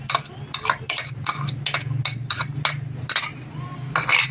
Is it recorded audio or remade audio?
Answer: recorded